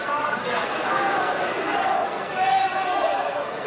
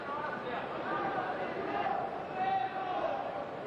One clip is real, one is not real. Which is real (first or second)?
second